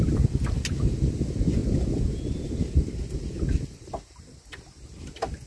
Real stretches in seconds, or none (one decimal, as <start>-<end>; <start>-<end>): 0.0-5.5